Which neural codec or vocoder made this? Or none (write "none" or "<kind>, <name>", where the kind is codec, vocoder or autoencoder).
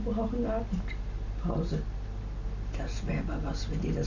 none